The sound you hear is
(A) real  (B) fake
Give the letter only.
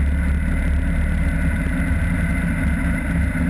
A